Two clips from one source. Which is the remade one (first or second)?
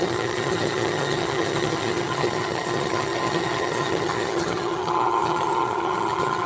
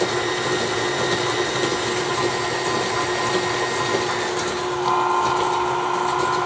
first